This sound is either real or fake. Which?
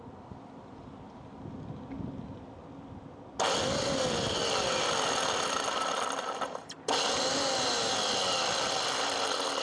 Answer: real